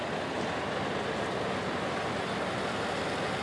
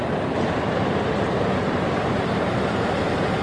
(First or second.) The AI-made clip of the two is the second